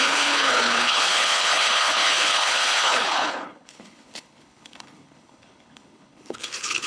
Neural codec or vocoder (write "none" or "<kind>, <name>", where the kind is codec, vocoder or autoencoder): codec, HILCodec